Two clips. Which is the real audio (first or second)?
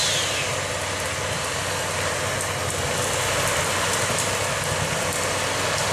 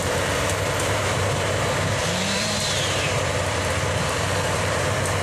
first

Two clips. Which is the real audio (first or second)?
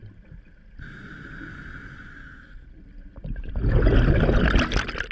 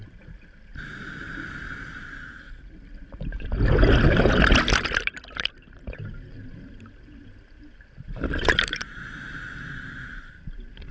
first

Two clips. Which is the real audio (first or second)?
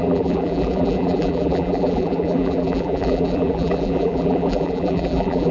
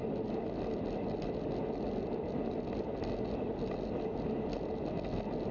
second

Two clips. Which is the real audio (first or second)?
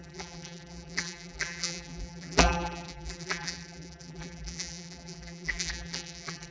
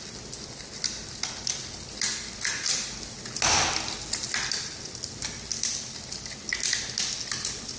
second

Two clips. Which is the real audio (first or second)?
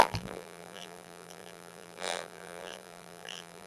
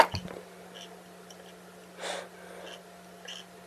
second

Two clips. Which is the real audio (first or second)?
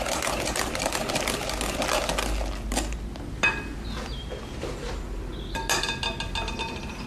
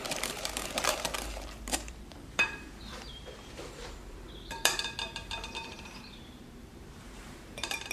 first